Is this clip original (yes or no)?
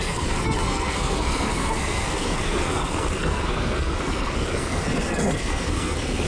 no